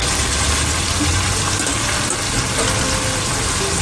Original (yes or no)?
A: yes